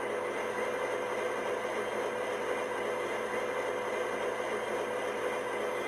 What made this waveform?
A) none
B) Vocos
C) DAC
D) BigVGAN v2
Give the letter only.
A